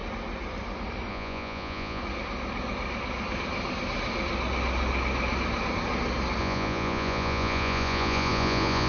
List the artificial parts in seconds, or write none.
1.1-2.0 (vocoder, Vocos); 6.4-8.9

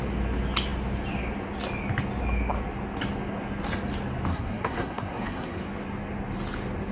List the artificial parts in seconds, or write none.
4.3-5.6 (codec, SNAC)

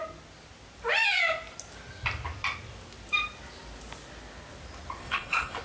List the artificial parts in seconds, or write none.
5.0-5.6 (codec, HILCodec)

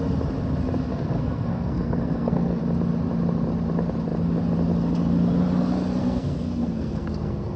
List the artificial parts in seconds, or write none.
0.9-2.6 (codec, SNAC); 6.0-7.6

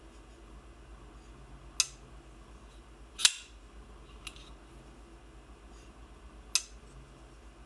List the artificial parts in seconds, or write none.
none